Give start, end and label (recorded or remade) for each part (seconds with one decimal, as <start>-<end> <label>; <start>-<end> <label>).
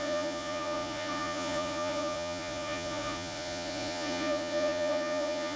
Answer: 0.0-5.6 remade